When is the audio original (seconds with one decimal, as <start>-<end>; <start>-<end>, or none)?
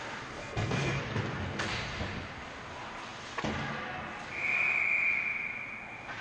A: 0.0-0.4; 1.0-6.2